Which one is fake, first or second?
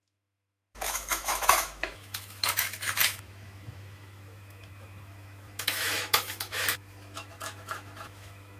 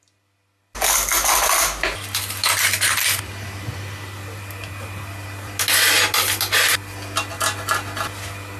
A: first